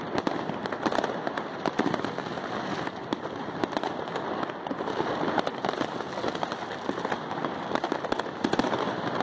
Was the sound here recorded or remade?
recorded